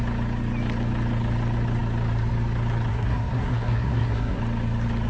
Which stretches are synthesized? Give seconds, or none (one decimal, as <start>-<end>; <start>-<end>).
2.9-4.4